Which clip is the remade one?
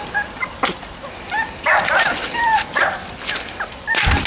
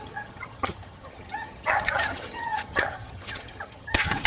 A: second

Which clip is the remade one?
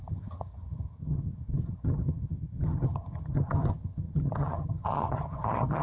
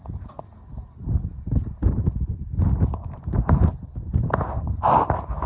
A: first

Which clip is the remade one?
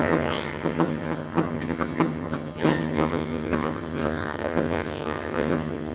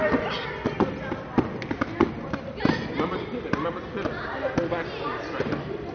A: first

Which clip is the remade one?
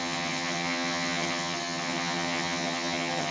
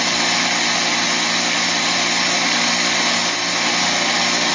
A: first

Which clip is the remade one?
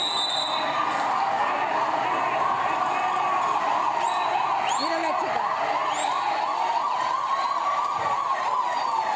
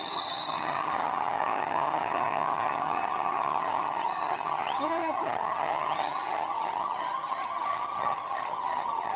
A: second